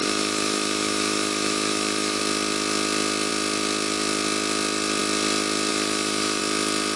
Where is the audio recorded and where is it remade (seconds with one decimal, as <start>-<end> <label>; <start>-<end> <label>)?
0.0-2.2 remade; 2.2-5.7 recorded; 5.7-6.4 remade; 6.4-7.0 recorded